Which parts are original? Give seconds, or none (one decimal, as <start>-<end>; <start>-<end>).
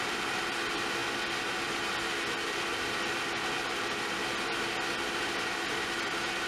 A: 0.0-6.5